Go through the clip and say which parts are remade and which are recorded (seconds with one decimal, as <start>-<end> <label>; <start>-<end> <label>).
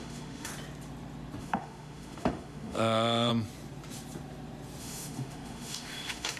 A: 0.0-0.5 remade; 0.5-1.4 recorded; 1.4-3.3 remade; 3.3-4.8 recorded; 4.8-6.4 remade